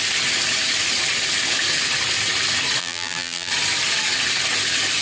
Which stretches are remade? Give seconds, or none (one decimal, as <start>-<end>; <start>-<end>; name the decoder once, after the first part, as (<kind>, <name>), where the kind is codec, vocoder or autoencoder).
2.8-3.5 (vocoder, BigVGAN v2)